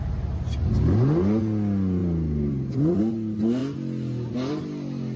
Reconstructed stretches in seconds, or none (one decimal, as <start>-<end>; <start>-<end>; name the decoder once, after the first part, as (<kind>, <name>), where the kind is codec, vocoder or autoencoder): 2.0-3.0 (vocoder, BigVGAN v2)